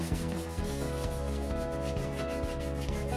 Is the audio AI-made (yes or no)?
yes